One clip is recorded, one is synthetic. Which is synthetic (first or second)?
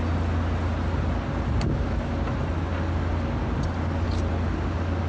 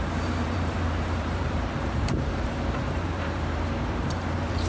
second